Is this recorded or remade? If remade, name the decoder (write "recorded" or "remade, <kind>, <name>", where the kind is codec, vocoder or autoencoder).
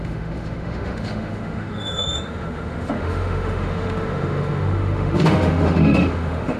remade, autoencoder, DAC-VAE